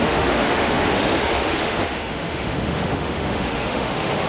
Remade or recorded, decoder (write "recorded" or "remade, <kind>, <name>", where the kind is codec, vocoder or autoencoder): remade, autoencoder, DAC-VAE